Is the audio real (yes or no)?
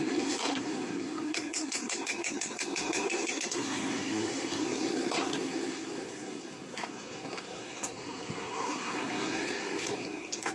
no